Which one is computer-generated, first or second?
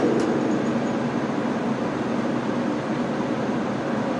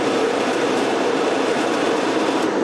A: second